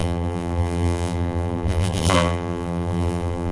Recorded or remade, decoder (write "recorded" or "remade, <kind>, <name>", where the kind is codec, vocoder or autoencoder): remade, vocoder, BigVGAN v2